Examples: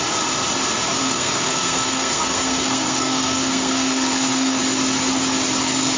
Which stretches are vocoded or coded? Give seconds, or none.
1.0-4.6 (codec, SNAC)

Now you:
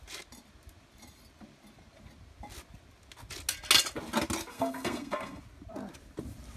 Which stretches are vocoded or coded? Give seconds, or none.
4.5-5.4 (codec, SNAC)

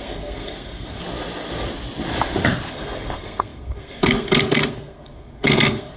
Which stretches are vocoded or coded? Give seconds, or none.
0.0-1.0 (codec, SNAC); 2.7-6.0

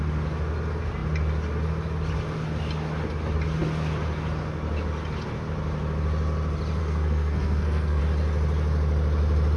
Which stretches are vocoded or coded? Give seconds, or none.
6.8-8.0 (codec, SNAC)

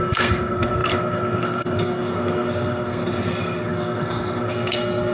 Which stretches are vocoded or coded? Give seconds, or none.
0.0-5.1 (codec, SNAC)

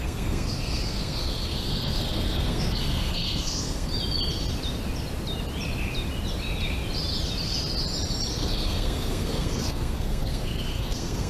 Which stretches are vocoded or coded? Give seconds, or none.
0.0-3.9 (codec, SNAC); 8.3-11.3

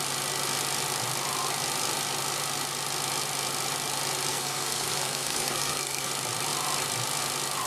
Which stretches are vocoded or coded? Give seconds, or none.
4.3-6.1 (codec, SNAC)